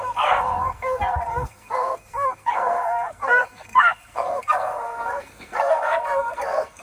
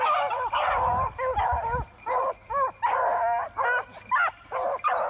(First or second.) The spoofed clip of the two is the first